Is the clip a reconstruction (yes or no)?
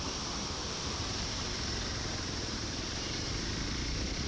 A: yes